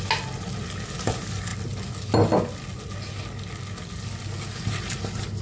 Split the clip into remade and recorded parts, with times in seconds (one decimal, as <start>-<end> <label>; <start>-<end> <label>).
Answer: 0.0-5.4 recorded